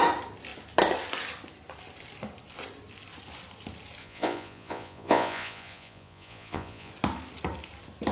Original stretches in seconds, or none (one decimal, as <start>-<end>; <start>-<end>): 0.0-4.0; 6.9-8.1